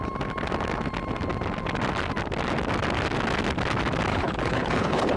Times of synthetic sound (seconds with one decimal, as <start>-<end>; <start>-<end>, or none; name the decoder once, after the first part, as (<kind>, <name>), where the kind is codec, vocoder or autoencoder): 4.1-5.2 (codec, HILCodec)